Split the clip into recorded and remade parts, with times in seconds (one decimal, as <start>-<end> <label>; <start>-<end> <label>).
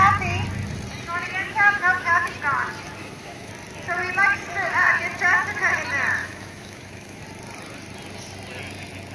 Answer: 0.0-1.4 recorded; 1.4-2.3 remade; 2.3-3.0 recorded; 3.0-3.5 remade; 3.5-6.2 recorded; 6.2-7.2 remade; 7.2-9.1 recorded